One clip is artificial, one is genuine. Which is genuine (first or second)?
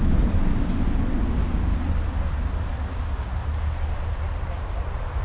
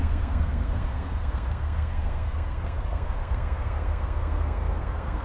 first